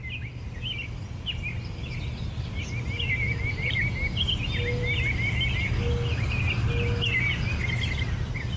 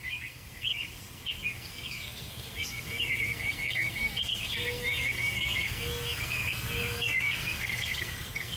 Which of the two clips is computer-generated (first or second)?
second